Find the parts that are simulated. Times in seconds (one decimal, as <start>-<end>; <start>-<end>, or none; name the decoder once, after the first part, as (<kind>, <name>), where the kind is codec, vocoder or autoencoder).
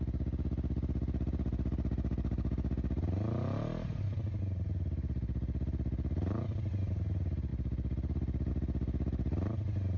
none